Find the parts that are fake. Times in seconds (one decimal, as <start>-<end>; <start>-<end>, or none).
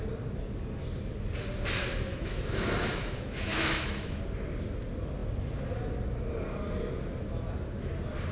2.1-4.2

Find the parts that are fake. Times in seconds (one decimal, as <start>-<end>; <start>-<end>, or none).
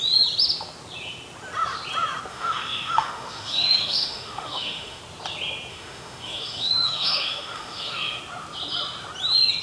2.3-5.0; 5.7-8.2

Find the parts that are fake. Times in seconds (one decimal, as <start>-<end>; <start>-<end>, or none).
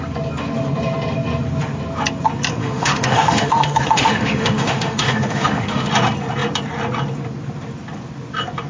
2.6-5.9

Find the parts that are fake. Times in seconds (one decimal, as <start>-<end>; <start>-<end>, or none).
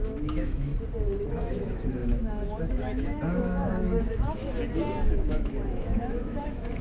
0.0-0.7; 1.3-4.4; 5.1-6.8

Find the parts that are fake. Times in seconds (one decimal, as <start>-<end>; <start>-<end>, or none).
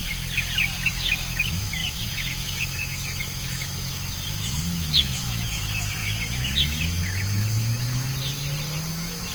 0.9-8.1; 8.9-9.3